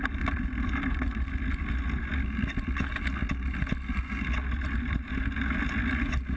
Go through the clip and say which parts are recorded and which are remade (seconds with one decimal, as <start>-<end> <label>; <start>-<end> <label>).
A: 0.0-6.4 recorded